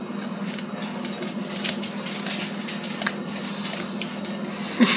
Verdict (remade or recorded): recorded